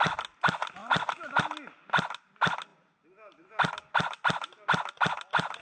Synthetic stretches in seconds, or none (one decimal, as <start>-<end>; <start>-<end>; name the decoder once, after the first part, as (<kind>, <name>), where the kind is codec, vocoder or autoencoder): none